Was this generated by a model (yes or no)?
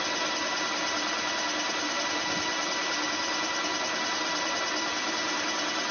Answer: no